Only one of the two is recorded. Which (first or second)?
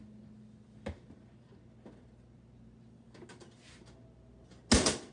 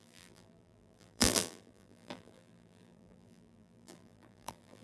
first